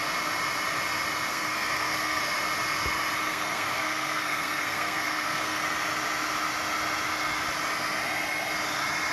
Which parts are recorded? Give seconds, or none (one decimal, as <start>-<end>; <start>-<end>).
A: 0.0-1.3; 2.2-3.3; 5.6-9.1